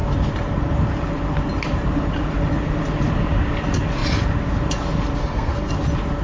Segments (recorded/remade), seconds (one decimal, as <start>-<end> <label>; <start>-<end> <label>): 0.0-5.2 recorded; 5.2-5.7 remade; 5.7-6.2 recorded